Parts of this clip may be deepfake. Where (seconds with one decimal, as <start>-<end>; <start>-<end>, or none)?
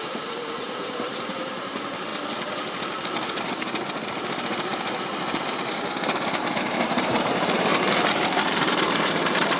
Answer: 0.0-2.1; 5.2-9.6